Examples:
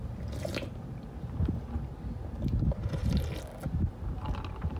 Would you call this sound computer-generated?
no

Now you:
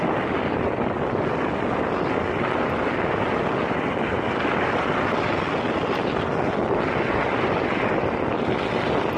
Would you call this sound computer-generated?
no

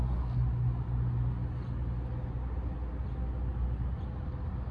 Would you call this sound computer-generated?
no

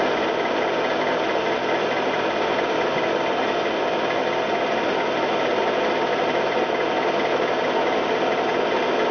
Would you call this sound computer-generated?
no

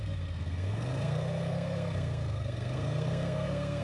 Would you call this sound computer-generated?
yes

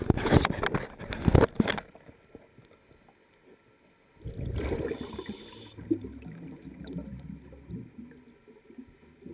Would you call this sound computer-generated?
no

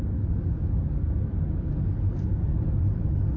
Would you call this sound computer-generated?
no